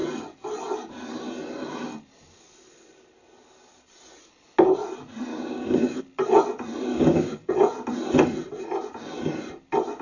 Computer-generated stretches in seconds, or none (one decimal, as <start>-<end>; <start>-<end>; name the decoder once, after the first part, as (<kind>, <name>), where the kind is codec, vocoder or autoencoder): 5.3-6.0 (codec, DAC); 6.9-7.5